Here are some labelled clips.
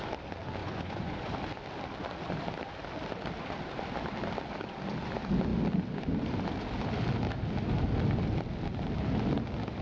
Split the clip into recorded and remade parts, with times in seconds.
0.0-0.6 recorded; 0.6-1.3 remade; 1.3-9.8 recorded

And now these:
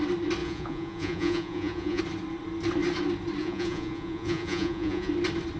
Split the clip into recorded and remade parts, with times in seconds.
0.0-0.4 recorded; 0.4-2.0 remade; 2.0-3.4 recorded; 3.4-5.1 remade; 5.1-5.6 recorded

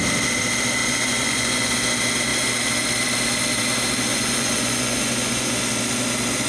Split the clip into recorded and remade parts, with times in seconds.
0.0-0.8 recorded; 0.8-1.7 remade; 1.7-4.1 recorded; 4.1-5.6 remade; 5.6-6.5 recorded

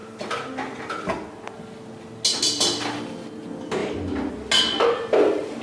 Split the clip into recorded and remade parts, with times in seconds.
0.0-5.6 recorded

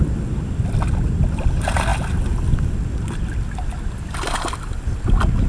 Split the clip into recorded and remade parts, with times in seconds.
0.0-5.5 recorded

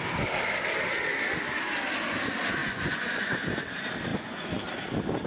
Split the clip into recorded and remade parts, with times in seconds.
0.0-2.6 recorded; 2.6-3.4 remade; 3.4-4.1 recorded; 4.1-4.6 remade; 4.6-5.3 recorded

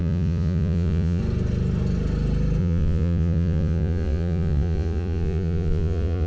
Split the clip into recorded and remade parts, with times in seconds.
0.0-1.2 remade; 1.2-2.6 recorded; 2.6-6.3 remade